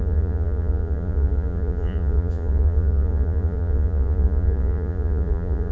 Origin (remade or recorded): remade